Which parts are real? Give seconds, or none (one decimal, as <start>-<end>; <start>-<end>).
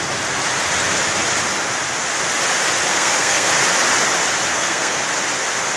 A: 0.0-2.9; 3.5-4.5; 5.0-5.8